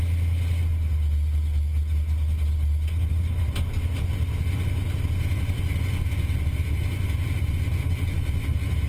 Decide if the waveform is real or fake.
real